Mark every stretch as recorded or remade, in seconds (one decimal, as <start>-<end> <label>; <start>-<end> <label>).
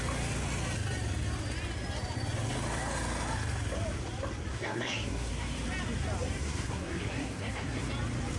0.0-4.5 recorded; 4.5-5.3 remade; 5.3-6.4 recorded; 6.4-7.9 remade; 7.9-8.4 recorded